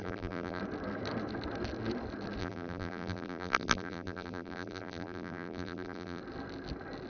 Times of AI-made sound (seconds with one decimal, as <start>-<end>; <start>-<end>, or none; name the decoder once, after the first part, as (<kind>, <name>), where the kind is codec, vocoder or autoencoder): 0.0-0.6 (vocoder, BigVGAN v2); 2.4-6.2